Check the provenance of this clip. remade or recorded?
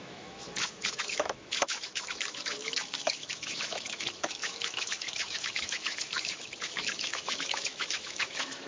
remade